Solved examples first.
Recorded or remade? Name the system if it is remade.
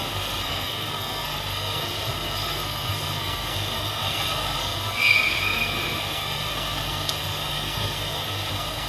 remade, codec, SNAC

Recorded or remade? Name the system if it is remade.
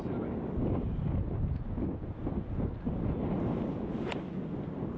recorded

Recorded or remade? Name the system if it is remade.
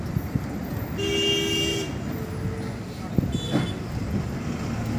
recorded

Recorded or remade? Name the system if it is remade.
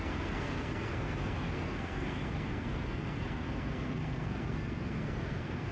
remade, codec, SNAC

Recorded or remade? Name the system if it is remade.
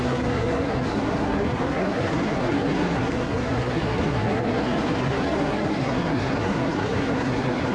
remade, codec, SNAC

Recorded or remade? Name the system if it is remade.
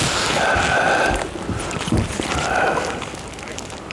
recorded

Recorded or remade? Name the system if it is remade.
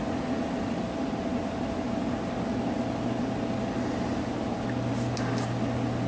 recorded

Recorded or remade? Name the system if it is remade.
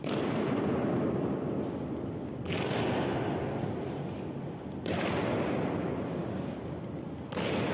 recorded